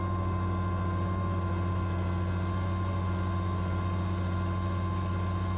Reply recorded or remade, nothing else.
recorded